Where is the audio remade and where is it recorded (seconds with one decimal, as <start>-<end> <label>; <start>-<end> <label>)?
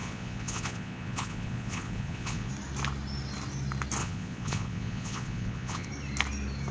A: 0.0-2.5 remade; 2.5-4.0 recorded; 4.0-5.9 remade; 5.9-6.7 recorded